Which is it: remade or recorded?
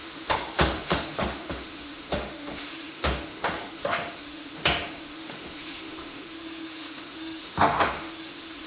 remade